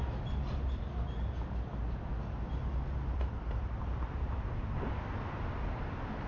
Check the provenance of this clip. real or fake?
real